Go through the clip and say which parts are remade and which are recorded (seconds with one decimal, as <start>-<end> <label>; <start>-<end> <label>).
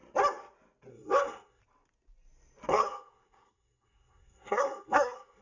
0.0-0.9 recorded; 0.9-1.6 remade; 1.6-2.7 recorded; 2.7-5.4 remade